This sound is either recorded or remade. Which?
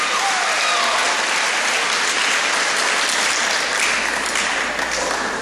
recorded